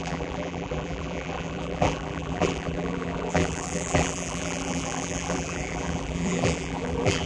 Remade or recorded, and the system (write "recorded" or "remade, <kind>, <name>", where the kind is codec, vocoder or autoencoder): remade, vocoder, BigVGAN v2